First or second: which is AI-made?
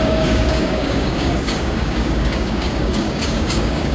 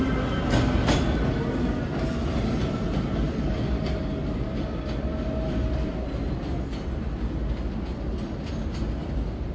first